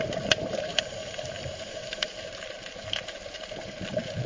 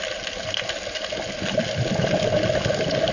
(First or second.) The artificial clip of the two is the first